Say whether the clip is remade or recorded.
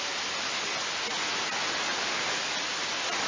recorded